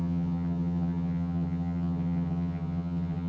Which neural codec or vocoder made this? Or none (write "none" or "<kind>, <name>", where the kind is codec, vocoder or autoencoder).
vocoder, HiFi-GAN